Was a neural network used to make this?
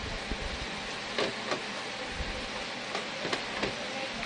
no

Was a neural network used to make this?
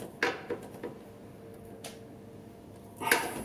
no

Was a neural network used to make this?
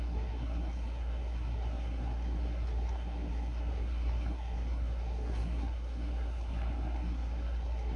yes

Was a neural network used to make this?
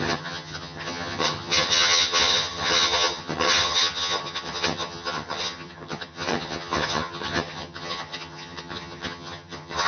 yes